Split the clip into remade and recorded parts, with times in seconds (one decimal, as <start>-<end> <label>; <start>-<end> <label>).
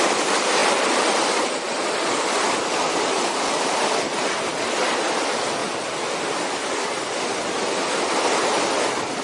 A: 0.0-5.6 remade; 5.6-8.1 recorded; 8.1-9.2 remade